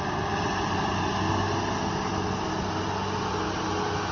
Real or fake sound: real